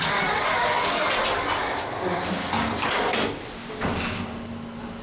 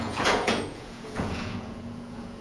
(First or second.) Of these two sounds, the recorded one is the first